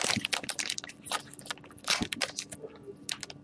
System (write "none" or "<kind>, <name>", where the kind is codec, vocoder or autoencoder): none